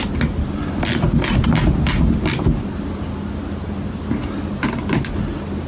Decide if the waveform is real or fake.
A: real